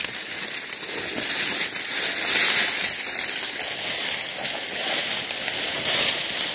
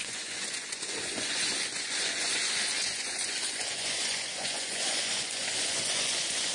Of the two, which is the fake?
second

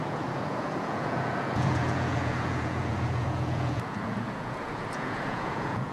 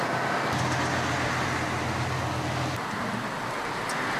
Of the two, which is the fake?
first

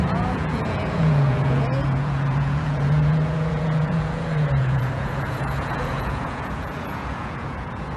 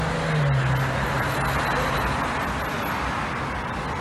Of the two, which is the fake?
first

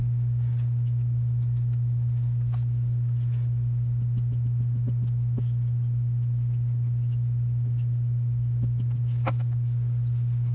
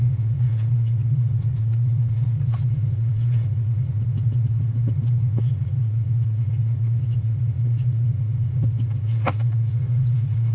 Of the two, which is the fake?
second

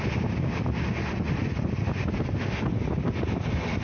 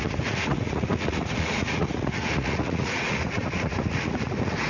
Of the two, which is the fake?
second